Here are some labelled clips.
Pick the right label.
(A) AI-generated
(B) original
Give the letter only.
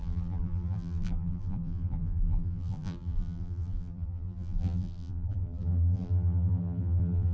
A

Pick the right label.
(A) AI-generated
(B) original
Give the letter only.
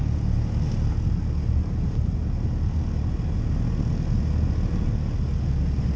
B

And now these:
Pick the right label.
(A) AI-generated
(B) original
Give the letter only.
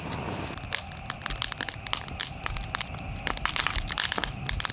B